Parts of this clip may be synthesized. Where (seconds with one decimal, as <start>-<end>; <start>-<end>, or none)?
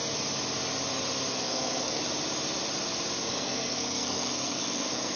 1.3-2.0; 3.3-5.2